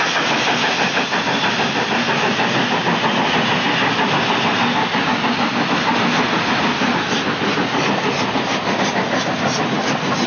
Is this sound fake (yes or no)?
no